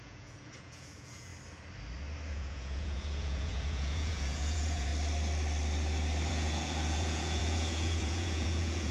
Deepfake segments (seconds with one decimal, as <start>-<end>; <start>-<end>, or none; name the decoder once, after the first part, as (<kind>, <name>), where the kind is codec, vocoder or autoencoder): 0.0-1.3 (vocoder, Vocos); 2.3-4.9; 6.3-8.9